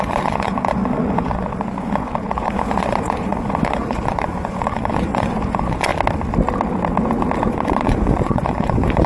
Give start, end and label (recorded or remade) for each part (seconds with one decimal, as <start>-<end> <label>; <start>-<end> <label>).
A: 0.0-5.9 remade; 5.9-7.5 recorded; 7.5-9.1 remade